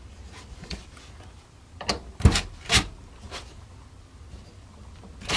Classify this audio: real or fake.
real